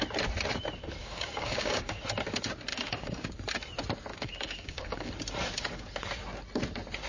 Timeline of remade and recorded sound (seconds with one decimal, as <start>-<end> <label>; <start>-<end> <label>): 0.0-1.0 recorded; 1.0-2.0 remade; 2.0-2.7 recorded; 2.7-3.3 remade; 3.3-4.1 recorded; 4.1-5.1 remade; 5.1-7.1 recorded